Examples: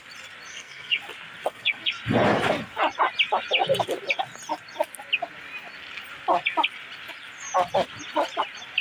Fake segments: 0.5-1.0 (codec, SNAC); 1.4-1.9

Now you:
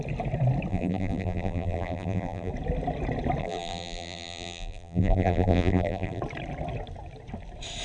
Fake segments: 0.7-2.5 (vocoder, BigVGAN v2); 3.4-6.2